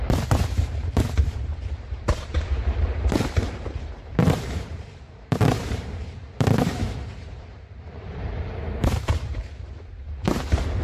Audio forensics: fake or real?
fake